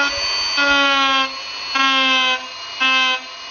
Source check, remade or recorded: recorded